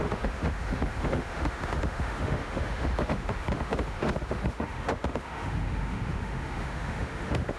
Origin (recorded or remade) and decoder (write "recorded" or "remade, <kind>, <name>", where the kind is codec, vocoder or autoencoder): remade, autoencoder, DAC-VAE